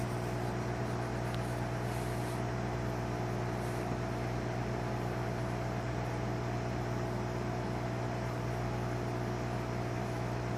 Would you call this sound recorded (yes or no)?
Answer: yes